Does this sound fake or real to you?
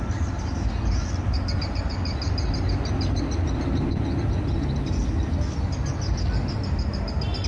real